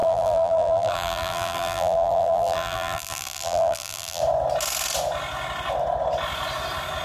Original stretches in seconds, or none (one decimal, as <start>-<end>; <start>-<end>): 4.2-7.0